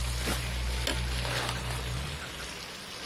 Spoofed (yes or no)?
no